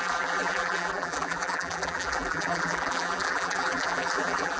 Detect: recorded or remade remade